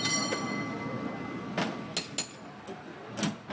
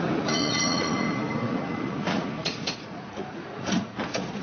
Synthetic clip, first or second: second